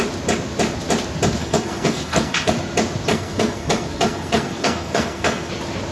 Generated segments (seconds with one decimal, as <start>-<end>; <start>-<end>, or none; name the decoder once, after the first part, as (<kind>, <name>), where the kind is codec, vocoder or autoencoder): 1.4-2.5 (codec, SNAC); 3.1-5.5